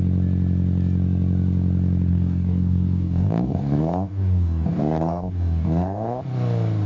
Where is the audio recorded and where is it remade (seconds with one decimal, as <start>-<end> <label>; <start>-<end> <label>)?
0.0-2.1 recorded; 2.1-6.2 remade; 6.2-6.9 recorded